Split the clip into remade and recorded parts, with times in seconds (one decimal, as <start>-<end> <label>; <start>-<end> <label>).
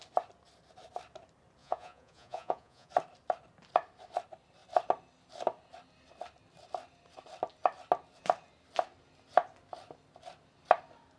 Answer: 0.0-1.6 recorded; 1.6-2.9 remade; 2.9-11.2 recorded